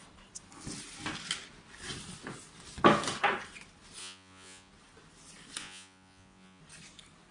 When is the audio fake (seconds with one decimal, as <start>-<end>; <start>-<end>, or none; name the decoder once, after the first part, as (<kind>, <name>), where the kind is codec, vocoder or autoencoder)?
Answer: 4.0-4.7 (vocoder, Vocos); 5.6-6.6